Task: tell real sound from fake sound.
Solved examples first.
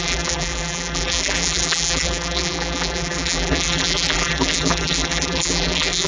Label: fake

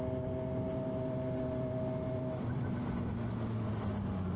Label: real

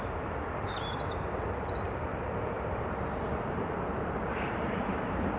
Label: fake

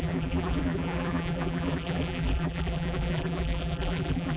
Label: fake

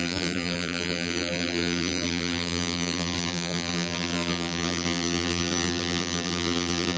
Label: fake